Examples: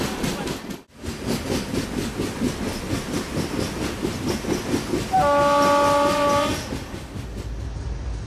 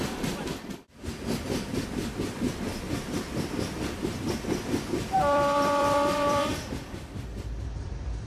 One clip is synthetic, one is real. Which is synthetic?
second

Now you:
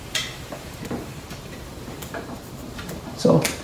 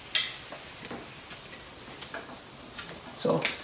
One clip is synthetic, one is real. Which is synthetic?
first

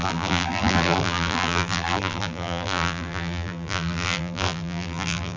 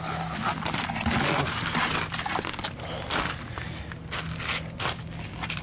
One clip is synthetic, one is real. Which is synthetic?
first